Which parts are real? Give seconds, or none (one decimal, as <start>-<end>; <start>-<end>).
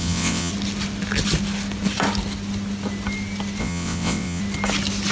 0.5-3.6; 4.4-5.1